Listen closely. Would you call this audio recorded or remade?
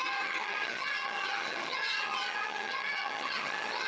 remade